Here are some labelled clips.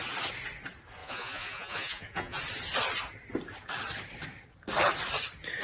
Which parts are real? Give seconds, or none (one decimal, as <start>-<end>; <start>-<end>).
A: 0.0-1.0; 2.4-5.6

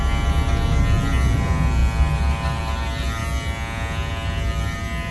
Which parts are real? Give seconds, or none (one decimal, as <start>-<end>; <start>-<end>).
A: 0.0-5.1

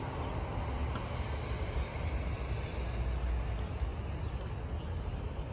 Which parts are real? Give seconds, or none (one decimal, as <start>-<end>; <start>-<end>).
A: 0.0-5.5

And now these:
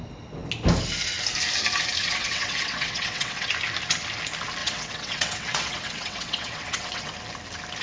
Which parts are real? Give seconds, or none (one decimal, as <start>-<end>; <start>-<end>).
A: 0.0-2.0; 3.5-4.6; 7.1-7.8